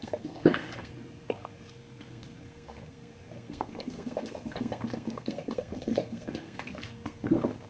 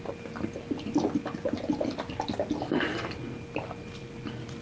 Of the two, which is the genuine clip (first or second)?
second